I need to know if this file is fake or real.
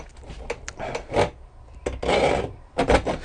real